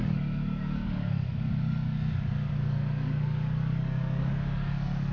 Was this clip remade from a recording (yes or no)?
yes